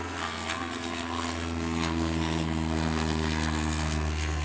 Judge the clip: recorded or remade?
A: remade